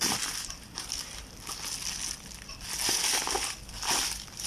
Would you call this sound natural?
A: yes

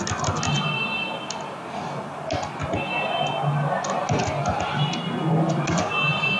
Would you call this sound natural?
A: yes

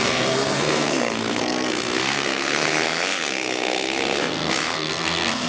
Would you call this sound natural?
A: no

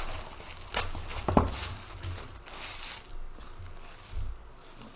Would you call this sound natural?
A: yes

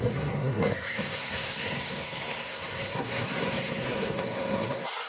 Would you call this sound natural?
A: no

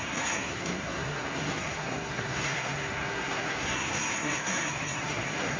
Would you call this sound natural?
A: no